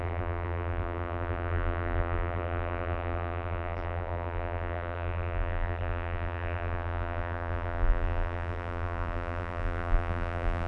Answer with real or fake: fake